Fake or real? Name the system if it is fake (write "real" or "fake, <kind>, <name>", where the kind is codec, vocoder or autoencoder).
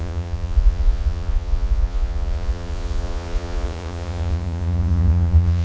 fake, vocoder, Vocos